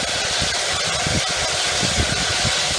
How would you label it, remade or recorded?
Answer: recorded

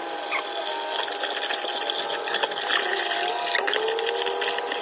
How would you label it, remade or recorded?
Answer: recorded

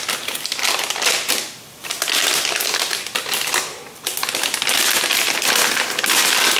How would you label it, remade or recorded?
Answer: recorded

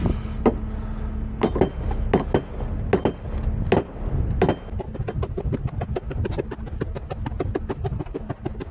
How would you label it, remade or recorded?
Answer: recorded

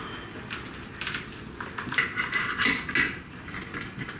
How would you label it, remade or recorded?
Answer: recorded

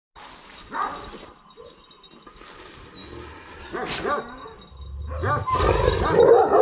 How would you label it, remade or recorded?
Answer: recorded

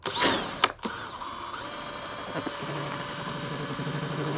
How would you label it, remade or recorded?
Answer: recorded